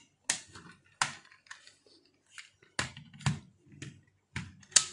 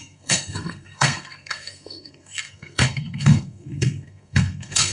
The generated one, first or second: second